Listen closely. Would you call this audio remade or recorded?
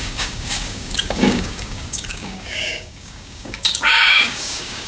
remade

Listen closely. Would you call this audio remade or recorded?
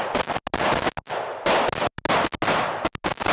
recorded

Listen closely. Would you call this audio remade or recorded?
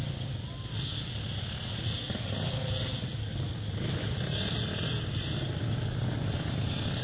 recorded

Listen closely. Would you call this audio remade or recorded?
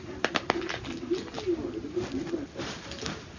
recorded